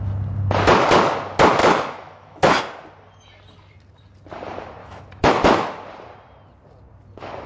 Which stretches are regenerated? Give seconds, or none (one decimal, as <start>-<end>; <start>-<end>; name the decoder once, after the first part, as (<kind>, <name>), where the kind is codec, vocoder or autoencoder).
1.6-2.6 (autoencoder, DAC-VAE); 4.8-5.3